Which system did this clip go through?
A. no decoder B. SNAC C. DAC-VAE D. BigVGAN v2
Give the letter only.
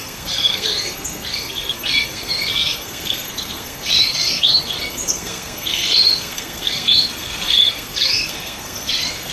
B